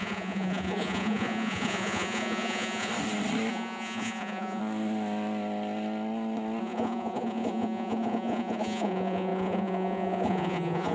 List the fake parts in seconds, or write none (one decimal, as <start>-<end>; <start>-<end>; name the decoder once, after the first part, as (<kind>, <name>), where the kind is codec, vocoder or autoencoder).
0.0-2.9 (vocoder, Vocos); 3.5-4.6; 6.6-10.9